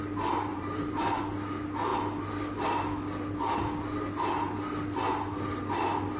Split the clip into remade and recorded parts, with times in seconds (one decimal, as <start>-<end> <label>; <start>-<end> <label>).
0.0-0.5 recorded; 0.5-1.2 remade; 1.2-6.2 recorded